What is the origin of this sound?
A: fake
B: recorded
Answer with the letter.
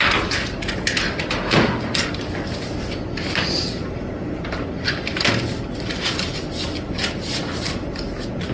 B